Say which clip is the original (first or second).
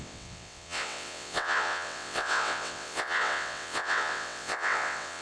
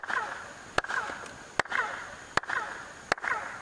second